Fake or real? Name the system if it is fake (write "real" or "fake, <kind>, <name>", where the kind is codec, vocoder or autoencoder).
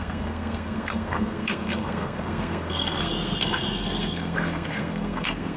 fake, codec, SNAC